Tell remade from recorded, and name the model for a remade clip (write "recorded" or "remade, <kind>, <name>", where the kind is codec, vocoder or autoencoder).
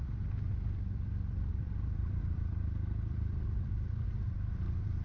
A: remade, vocoder, BigVGAN v2